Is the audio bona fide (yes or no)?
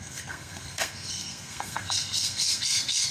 no